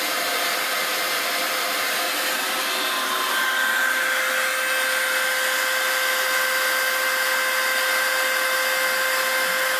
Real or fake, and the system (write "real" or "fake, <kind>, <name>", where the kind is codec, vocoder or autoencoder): real